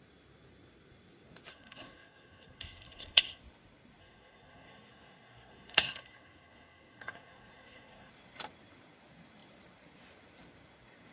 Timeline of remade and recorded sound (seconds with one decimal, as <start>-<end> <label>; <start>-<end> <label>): 0.0-1.5 recorded; 1.5-3.4 remade; 3.4-4.0 recorded; 4.0-8.1 remade; 8.1-11.1 recorded